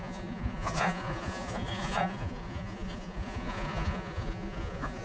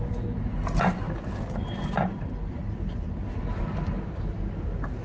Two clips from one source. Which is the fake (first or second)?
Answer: first